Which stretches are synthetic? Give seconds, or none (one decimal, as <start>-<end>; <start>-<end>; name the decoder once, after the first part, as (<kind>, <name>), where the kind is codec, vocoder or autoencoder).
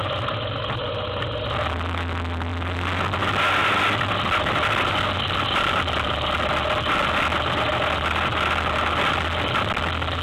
none